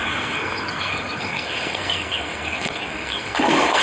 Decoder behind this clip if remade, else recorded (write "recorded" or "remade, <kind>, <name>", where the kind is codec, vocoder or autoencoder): remade, codec, SNAC